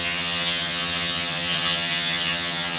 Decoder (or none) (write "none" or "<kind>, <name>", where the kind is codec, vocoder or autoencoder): vocoder, HiFi-GAN